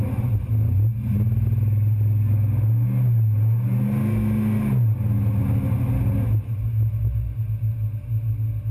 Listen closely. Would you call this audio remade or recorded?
recorded